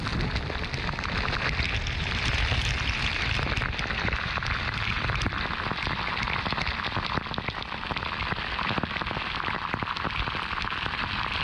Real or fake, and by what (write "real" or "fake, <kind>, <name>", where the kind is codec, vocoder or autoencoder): real